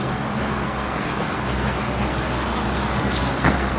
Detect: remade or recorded remade